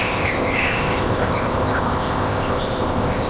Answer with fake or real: fake